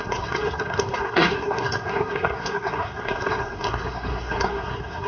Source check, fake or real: fake